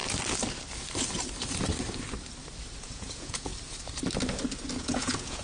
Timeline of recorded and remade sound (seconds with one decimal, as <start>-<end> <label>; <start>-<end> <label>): 0.0-2.8 recorded; 2.8-3.5 remade; 3.5-4.8 recorded; 4.8-5.4 remade